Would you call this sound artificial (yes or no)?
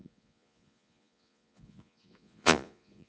yes